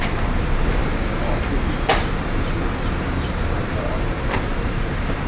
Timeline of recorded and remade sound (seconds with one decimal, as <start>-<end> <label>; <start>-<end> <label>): 0.0-0.8 remade; 0.8-2.8 recorded; 2.8-5.3 remade